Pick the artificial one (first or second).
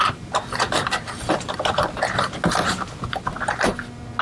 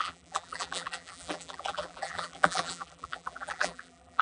second